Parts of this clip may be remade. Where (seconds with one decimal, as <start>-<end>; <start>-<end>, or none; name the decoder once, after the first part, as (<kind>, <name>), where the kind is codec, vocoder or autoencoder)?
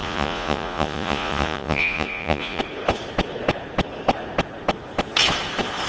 0.0-2.6 (vocoder, Vocos)